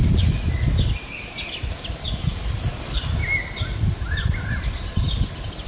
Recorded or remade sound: recorded